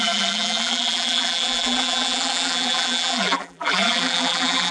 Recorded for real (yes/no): no